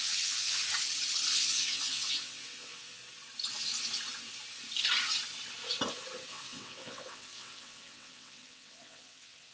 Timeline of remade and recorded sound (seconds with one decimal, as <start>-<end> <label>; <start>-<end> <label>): 0.0-0.6 remade; 0.6-1.3 recorded; 1.3-3.0 remade; 3.0-6.3 recorded; 6.3-9.5 remade